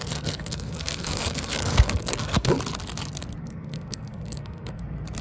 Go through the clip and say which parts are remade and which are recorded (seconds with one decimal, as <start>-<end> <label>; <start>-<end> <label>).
0.0-2.5 remade; 2.5-3.4 recorded; 3.4-4.8 remade; 4.8-5.2 recorded